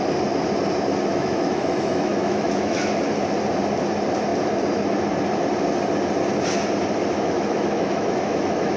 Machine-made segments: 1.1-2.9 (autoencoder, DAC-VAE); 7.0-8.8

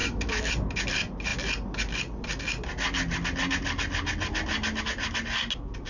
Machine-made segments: 0.0-0.5 (autoencoder, DAC-VAE)

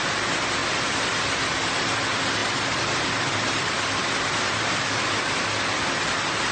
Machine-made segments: none

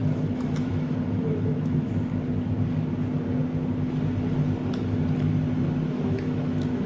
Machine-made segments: 0.0-1.9 (autoencoder, DAC-VAE); 5.9-6.9

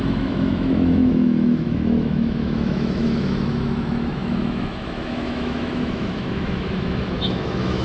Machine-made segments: 0.0-7.8 (autoencoder, DAC-VAE)